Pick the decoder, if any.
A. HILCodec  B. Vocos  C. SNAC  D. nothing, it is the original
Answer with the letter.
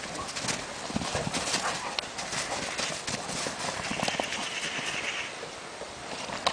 D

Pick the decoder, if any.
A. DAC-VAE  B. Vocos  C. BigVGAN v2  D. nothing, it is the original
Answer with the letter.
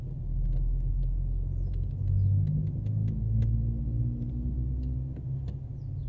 D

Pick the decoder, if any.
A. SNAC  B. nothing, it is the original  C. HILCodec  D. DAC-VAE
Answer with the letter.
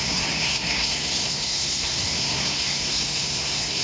A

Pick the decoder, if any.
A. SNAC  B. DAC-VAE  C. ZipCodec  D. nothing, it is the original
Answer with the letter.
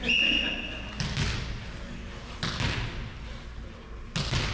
D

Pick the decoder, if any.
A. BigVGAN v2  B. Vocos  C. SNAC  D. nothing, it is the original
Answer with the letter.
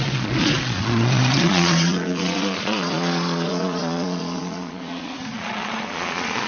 B